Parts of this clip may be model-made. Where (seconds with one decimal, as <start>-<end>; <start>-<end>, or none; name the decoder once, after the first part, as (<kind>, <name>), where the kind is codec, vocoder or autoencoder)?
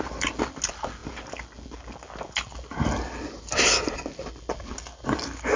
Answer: none